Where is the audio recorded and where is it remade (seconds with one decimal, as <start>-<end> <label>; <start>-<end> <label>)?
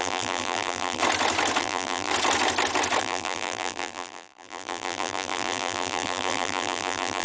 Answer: 0.0-1.0 remade; 1.0-1.6 recorded; 1.6-2.1 remade; 2.1-3.0 recorded; 3.0-7.2 remade